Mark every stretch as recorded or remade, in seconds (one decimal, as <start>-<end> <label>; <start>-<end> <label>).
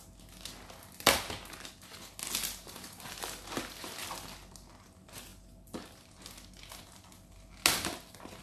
0.0-8.4 recorded